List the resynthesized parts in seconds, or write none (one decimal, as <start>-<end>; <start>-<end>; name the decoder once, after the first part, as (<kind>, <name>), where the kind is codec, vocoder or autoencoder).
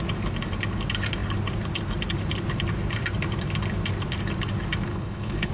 4.9-5.5 (codec, HILCodec)